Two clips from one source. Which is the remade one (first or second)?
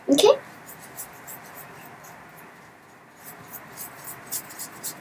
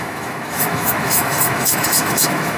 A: second